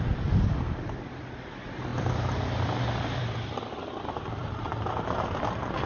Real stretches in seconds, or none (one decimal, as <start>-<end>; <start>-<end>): 0.0-1.9; 5.3-5.9